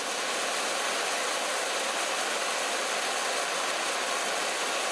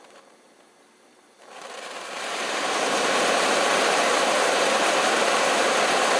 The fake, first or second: second